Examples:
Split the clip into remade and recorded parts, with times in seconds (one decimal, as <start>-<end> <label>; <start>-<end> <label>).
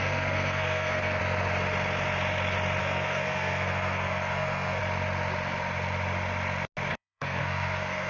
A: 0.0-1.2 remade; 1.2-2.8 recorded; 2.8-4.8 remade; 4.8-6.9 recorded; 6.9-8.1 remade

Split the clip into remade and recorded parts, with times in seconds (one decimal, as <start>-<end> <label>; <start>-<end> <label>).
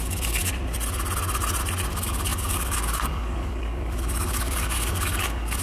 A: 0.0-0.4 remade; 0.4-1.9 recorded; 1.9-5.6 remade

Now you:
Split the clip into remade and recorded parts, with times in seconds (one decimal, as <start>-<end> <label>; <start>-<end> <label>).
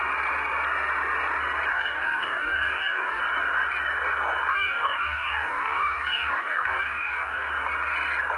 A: 0.0-1.7 recorded; 1.7-3.2 remade; 3.2-4.5 recorded; 4.5-7.5 remade; 7.5-8.4 recorded